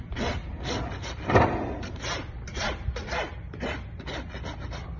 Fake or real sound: real